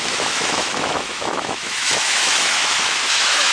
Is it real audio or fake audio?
fake